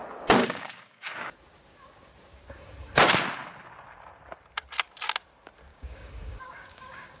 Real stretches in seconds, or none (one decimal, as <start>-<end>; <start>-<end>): 0.0-0.4; 1.2-5.7